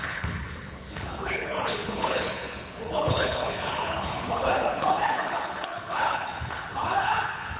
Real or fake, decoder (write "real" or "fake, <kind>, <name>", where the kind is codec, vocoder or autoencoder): fake, codec, HILCodec